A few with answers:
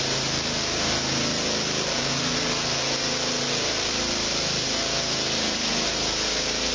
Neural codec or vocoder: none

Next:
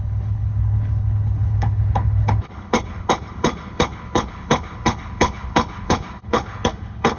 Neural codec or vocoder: codec, HILCodec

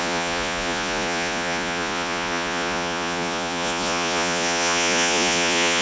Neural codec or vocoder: vocoder, Vocos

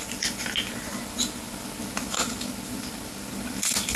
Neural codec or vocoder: none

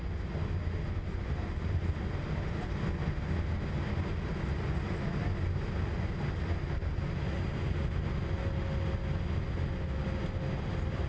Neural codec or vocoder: none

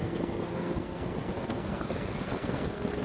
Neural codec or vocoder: codec, SNAC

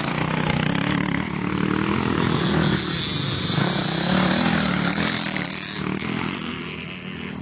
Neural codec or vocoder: none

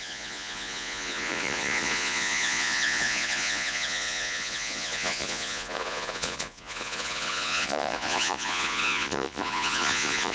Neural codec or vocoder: vocoder, Vocos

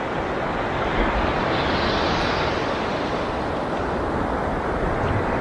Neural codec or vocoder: none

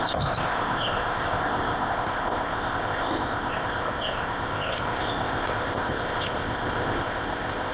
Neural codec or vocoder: codec, ZipCodec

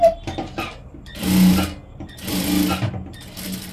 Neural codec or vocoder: none